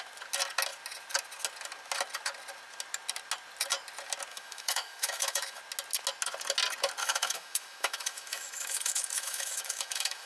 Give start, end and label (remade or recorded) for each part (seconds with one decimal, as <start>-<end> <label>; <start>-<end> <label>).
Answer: 0.0-4.3 recorded; 4.3-5.6 remade; 5.6-7.0 recorded; 7.0-10.3 remade